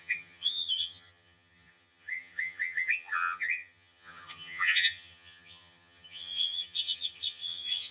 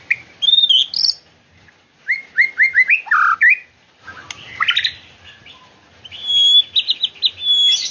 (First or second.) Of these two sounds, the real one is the second